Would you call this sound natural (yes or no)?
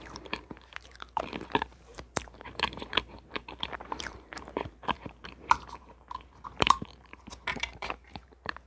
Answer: no